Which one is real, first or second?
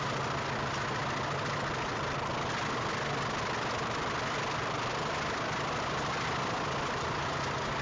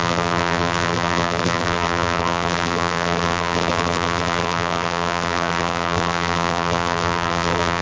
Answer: first